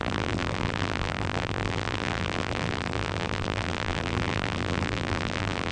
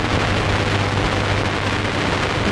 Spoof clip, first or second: first